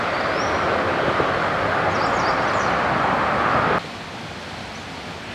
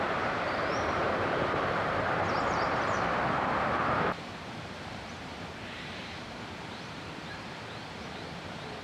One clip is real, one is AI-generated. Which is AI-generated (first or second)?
second